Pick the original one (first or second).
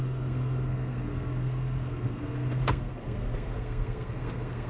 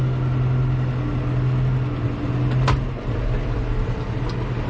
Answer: second